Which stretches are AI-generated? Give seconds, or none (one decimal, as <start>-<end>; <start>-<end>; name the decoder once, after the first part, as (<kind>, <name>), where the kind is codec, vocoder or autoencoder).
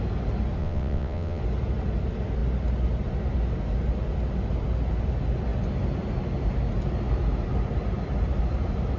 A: 0.6-1.4 (vocoder, WaveNeXt)